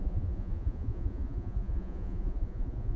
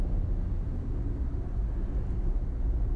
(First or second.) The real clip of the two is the second